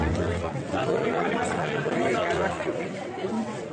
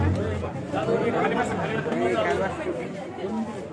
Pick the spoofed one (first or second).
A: first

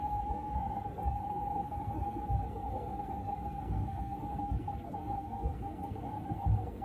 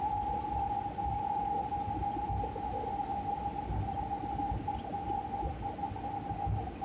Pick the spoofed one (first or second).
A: first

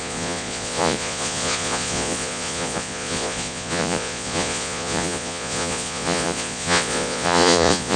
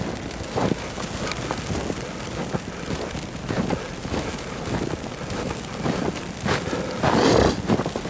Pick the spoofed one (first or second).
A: first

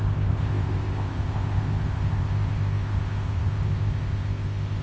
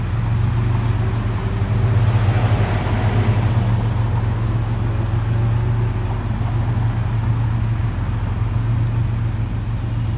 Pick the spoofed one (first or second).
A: first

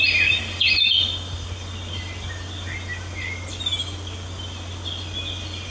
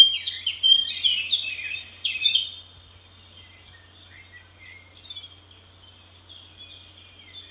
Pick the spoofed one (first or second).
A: second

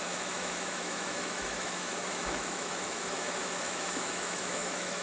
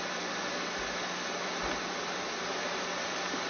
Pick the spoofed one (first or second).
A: first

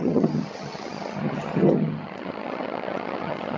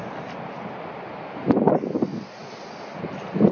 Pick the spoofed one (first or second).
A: first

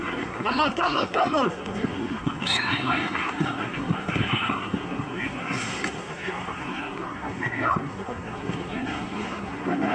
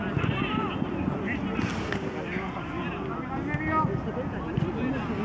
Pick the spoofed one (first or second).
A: first